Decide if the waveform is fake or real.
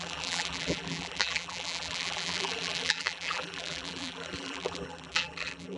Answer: fake